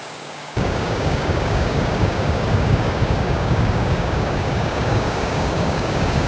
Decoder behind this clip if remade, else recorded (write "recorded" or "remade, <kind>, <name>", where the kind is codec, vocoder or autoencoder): remade, codec, DAC